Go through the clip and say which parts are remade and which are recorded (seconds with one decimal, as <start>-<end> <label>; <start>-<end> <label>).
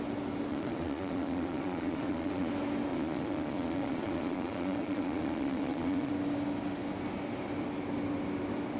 0.0-0.5 recorded; 0.5-2.5 remade; 2.5-2.9 recorded; 2.9-6.1 remade; 6.1-8.8 recorded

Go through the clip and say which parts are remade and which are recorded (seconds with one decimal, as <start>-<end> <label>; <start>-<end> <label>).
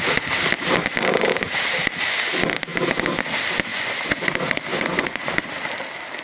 0.0-3.7 recorded; 3.7-4.3 remade; 4.3-4.7 recorded; 4.7-5.3 remade; 5.3-6.2 recorded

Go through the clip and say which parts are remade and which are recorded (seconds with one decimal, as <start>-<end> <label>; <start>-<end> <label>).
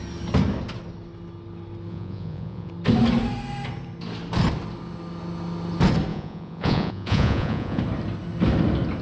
0.0-1.9 recorded; 1.9-2.7 remade; 2.7-6.1 recorded; 6.1-7.8 remade; 7.8-9.0 recorded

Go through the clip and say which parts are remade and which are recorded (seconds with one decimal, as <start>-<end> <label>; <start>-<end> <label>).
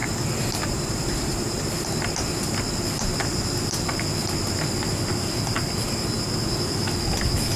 0.0-7.6 recorded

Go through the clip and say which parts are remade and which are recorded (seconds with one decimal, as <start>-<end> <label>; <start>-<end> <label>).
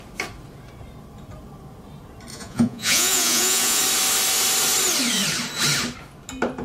0.0-2.3 recorded; 2.3-3.8 remade; 3.8-6.6 recorded